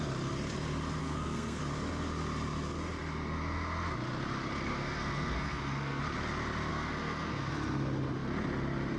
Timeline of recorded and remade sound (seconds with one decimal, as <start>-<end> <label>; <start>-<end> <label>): 0.0-1.0 recorded; 1.0-1.6 remade; 1.6-4.7 recorded; 4.7-6.0 remade; 6.0-6.7 recorded; 6.7-7.5 remade; 7.5-9.0 recorded